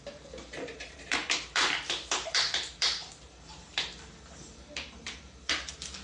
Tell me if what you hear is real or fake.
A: fake